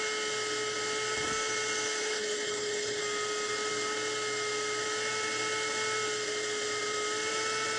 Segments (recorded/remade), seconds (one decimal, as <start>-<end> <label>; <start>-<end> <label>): 0.0-2.0 recorded; 2.0-3.0 remade; 3.0-7.8 recorded